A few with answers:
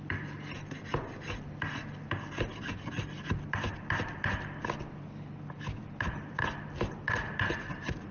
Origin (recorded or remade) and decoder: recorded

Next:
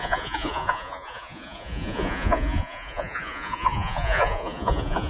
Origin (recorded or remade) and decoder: remade, vocoder, Vocos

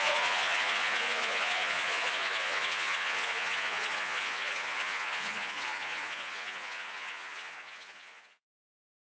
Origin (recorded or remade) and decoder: remade, vocoder, Vocos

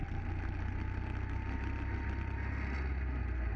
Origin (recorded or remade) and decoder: recorded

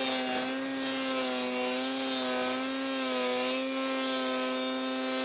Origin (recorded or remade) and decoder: recorded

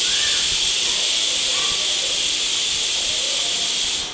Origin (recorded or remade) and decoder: recorded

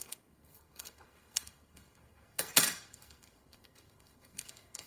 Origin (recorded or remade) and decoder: remade, codec, SNAC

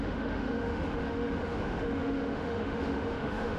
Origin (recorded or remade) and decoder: remade, autoencoder, DAC-VAE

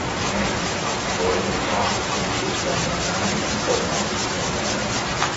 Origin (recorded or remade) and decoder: remade, vocoder, BigVGAN v2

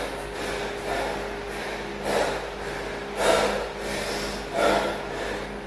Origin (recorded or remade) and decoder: recorded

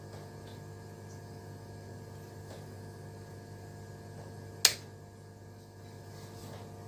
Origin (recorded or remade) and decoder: recorded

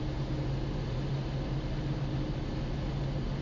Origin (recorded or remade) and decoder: recorded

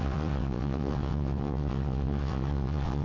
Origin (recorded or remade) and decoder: remade, vocoder, WaveNeXt